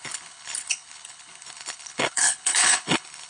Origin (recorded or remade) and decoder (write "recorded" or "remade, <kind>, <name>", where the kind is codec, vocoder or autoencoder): remade, codec, HILCodec